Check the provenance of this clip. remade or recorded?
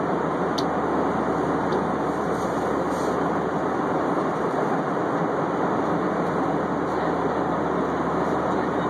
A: recorded